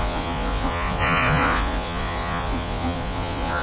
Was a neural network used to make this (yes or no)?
yes